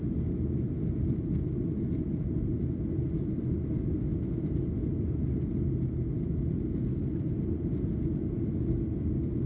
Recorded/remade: recorded